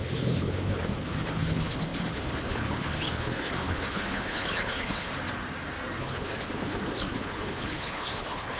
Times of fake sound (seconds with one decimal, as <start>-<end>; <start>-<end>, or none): 0.0-5.1; 6.0-8.6